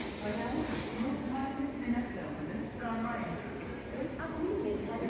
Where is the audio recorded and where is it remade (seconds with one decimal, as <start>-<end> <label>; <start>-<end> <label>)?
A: 0.0-5.1 recorded